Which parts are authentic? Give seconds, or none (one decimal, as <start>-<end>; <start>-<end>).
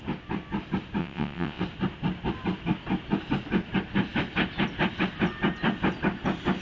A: 0.0-1.0; 1.6-6.6